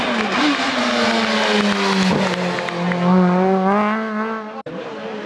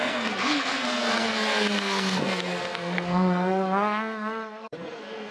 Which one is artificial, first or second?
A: second